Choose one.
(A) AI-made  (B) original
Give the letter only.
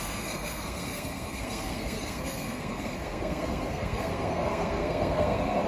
A